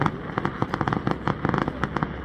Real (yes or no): yes